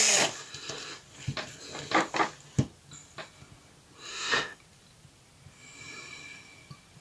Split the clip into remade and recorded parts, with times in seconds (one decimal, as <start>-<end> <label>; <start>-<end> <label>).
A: 0.0-4.1 recorded; 4.1-4.6 remade; 4.6-7.0 recorded

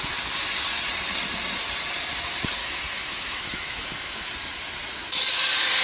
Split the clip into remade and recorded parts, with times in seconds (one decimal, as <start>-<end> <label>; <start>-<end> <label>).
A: 0.0-2.6 recorded; 2.6-4.3 remade; 4.3-5.8 recorded

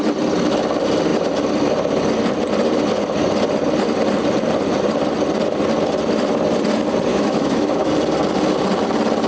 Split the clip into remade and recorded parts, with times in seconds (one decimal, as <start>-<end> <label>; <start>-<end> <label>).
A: 0.0-7.1 recorded; 7.1-7.9 remade; 7.9-9.3 recorded